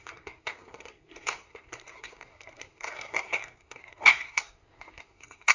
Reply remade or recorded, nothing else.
remade